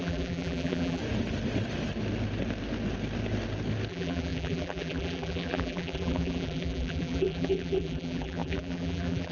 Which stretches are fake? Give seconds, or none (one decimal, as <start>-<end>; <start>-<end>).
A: 0.0-1.0; 3.9-9.3